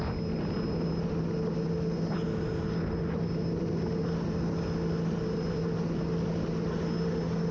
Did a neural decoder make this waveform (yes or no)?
no